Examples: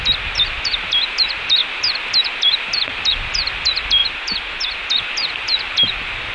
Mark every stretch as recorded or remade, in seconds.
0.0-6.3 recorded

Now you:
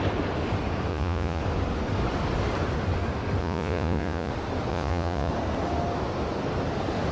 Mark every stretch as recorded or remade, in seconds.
0.0-0.9 recorded; 0.9-1.4 remade; 1.4-3.4 recorded; 3.4-4.3 remade; 4.3-4.7 recorded; 4.7-5.3 remade; 5.3-7.1 recorded

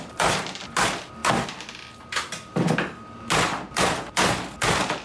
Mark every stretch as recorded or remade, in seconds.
0.0-5.0 recorded

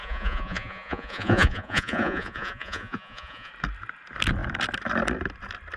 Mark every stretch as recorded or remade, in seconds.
0.0-3.5 remade; 3.5-5.8 recorded